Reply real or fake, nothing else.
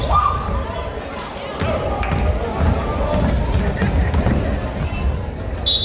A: real